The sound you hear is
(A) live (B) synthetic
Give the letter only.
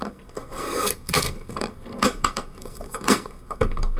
B